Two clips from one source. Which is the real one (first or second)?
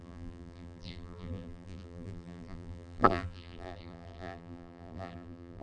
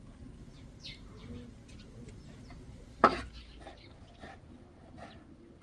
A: second